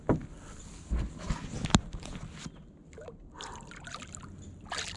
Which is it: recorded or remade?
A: recorded